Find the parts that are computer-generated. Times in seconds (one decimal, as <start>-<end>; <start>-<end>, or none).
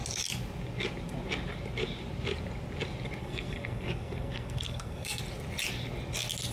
3.2-5.2